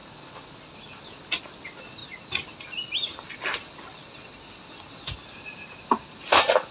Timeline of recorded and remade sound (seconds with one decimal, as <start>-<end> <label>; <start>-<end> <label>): 0.0-6.7 recorded